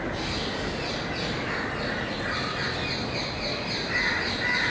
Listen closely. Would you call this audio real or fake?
real